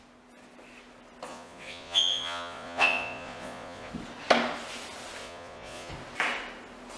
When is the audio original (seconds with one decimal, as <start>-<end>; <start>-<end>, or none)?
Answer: 0.0-1.3; 3.9-5.2; 5.9-7.0